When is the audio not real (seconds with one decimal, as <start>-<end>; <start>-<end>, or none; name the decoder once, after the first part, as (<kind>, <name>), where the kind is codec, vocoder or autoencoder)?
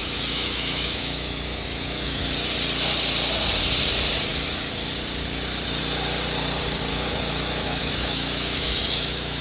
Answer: 0.0-2.2 (autoencoder, DAC-VAE); 6.9-9.4